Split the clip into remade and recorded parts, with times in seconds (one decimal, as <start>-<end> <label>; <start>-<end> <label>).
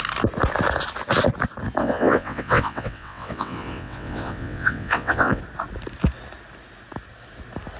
0.0-1.8 recorded; 1.8-5.4 remade; 5.4-7.8 recorded